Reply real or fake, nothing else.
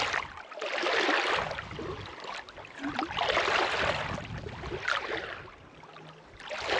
real